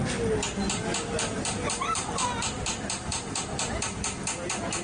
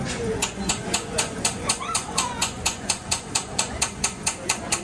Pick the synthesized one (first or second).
second